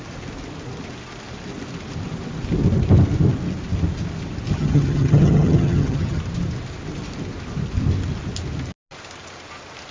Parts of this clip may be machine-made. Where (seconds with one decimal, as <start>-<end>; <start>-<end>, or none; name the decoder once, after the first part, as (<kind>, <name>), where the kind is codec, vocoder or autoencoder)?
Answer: 4.5-6.2 (vocoder, HiFi-GAN)